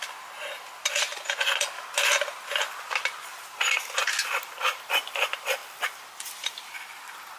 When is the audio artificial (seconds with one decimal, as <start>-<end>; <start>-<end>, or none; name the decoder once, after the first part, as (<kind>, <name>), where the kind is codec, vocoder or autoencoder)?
none